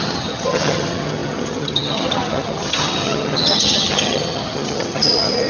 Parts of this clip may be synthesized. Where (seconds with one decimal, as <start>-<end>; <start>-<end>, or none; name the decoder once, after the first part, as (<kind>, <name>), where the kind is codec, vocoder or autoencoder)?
0.0-5.5 (vocoder, HiFi-GAN)